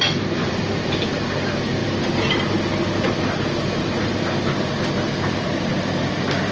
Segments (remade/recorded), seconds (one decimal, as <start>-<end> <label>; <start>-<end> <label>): 0.0-6.5 recorded